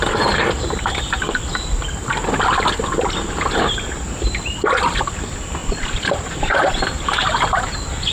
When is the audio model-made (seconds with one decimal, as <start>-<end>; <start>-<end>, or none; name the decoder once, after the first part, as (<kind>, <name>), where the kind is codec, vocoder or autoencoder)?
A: 5.6-6.9 (vocoder, BigVGAN v2)